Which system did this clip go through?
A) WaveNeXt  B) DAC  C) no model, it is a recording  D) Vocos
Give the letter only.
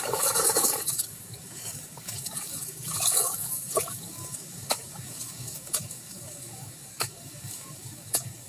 B